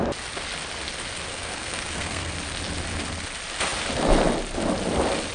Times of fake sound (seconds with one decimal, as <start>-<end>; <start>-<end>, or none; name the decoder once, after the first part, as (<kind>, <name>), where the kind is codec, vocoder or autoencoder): 1.3-2.3 (codec, SNAC)